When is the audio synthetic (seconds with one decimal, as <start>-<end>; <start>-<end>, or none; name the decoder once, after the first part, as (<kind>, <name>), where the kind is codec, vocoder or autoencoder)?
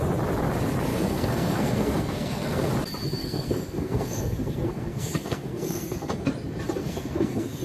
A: 0.9-2.7 (codec, SNAC); 3.2-6.3; 6.8-7.6